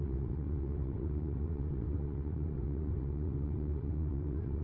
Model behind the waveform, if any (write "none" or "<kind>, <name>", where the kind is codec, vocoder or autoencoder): vocoder, WaveNeXt